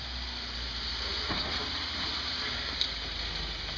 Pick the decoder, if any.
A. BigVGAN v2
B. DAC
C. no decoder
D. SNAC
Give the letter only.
C